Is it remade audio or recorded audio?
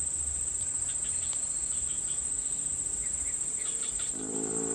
recorded